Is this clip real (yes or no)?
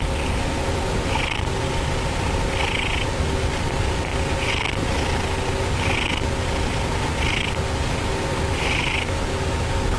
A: yes